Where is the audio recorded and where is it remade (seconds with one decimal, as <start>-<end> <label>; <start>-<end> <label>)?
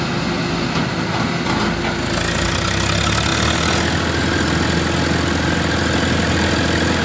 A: 0.0-7.0 recorded